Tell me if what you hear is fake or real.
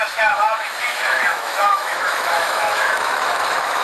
fake